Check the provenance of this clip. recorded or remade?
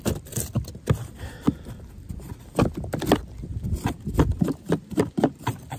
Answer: recorded